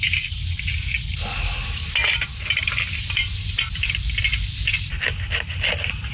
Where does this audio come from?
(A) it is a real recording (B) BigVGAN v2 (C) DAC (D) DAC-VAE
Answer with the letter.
A